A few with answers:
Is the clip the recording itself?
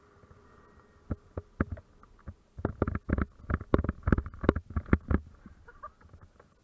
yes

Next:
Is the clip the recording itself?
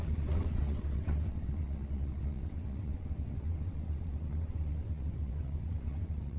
no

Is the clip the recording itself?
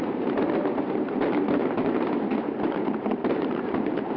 no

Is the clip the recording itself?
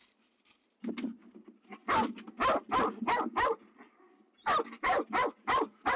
yes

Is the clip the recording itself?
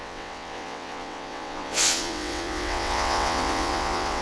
no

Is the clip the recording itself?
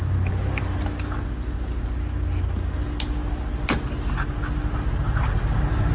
yes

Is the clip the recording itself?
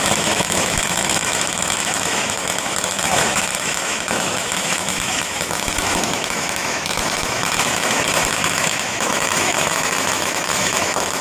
no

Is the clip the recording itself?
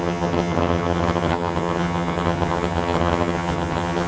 no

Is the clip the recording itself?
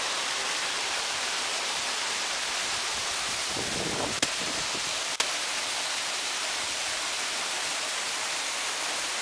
yes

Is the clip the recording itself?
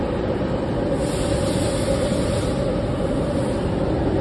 yes